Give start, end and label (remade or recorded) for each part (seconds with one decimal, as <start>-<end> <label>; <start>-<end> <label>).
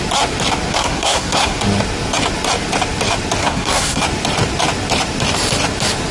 0.0-0.7 recorded; 0.7-1.6 remade; 1.6-3.4 recorded; 3.4-4.0 remade; 4.0-6.1 recorded